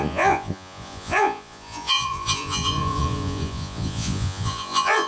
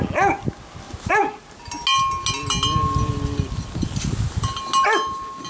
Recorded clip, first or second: second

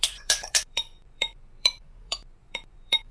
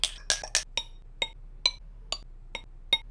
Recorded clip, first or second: second